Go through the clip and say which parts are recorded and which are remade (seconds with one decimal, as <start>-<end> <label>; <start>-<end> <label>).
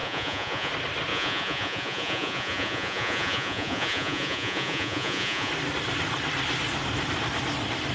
0.0-0.7 remade; 0.7-1.1 recorded; 1.1-5.5 remade; 5.5-7.9 recorded